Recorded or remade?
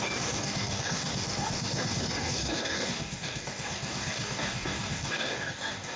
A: remade